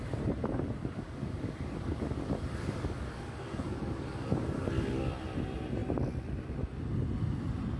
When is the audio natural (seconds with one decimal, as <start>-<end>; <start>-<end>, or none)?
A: 0.0-0.4; 5.1-7.8